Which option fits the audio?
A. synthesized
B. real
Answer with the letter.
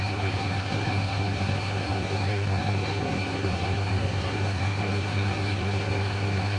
A